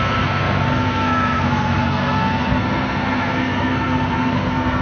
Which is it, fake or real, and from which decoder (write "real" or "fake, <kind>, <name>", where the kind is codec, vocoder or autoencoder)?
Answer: fake, codec, SNAC